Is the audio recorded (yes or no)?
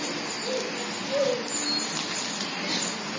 yes